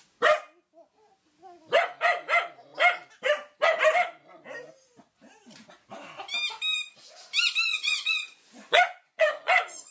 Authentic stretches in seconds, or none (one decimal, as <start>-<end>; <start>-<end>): 0.0-7.7